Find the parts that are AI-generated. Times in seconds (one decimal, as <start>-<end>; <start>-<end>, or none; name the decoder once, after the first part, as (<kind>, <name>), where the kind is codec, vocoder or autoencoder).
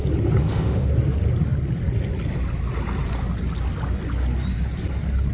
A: 0.4-0.9 (autoencoder, DAC-VAE)